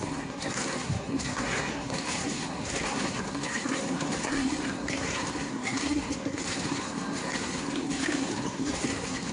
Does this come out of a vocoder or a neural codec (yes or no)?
yes